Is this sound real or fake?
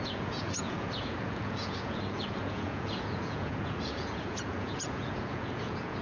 fake